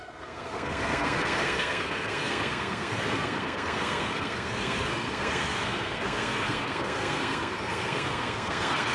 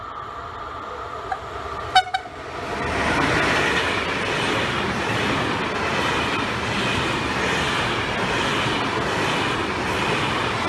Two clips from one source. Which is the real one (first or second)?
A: second